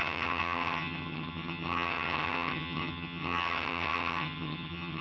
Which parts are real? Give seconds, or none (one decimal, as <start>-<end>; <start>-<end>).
none

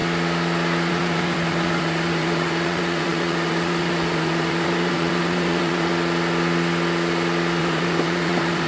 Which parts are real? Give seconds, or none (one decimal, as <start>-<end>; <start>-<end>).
0.0-0.9; 5.9-7.6

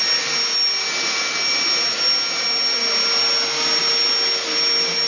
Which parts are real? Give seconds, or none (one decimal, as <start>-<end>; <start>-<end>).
0.0-5.1